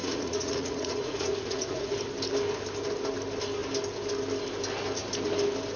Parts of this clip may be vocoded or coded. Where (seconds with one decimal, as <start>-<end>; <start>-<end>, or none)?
0.0-1.9